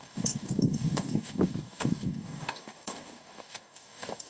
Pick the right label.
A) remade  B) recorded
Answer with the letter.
A